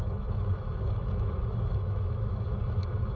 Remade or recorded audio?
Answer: remade